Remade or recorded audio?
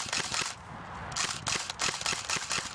recorded